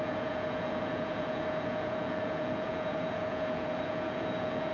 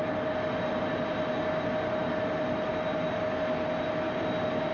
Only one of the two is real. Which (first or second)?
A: second